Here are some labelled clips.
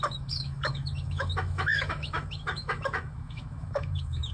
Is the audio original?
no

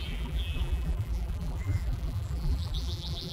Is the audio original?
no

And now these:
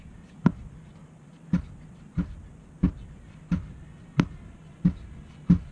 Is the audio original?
yes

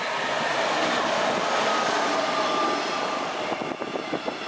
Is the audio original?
yes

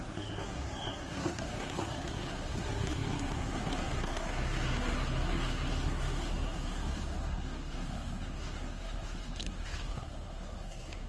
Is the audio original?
no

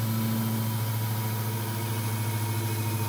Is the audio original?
yes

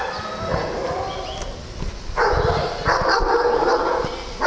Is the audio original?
yes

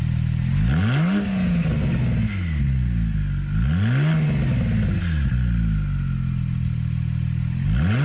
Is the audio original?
yes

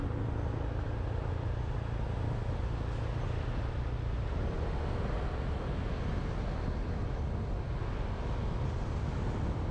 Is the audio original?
yes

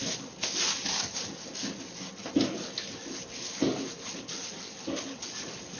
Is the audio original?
yes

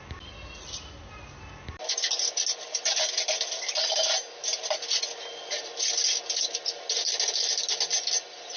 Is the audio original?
yes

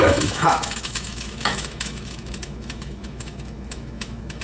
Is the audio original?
no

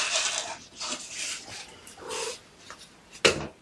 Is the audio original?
yes